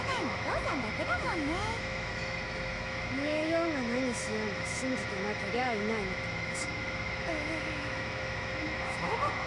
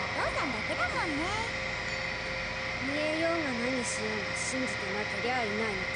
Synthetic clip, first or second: first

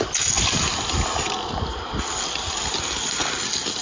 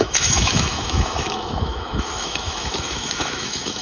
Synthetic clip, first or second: second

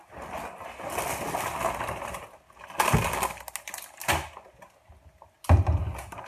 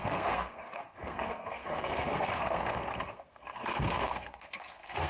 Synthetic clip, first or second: second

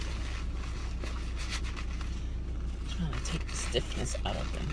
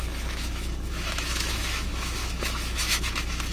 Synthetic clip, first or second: second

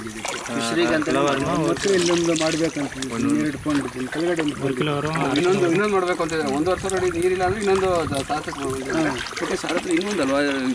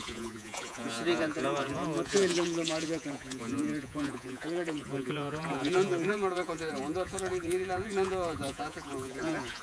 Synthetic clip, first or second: second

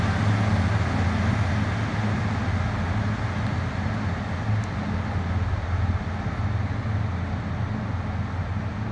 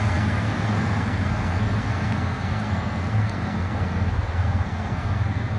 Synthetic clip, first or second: second